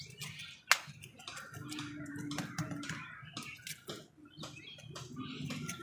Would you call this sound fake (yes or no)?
no